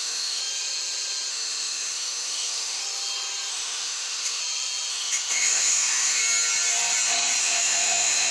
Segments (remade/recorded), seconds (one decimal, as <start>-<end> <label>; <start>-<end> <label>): 0.0-0.4 remade; 0.4-1.3 recorded; 1.3-2.8 remade; 2.8-3.5 recorded; 3.5-4.4 remade; 4.4-4.9 recorded; 4.9-6.2 remade; 6.2-7.4 recorded; 7.4-8.3 remade